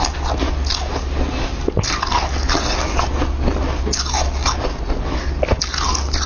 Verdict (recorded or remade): recorded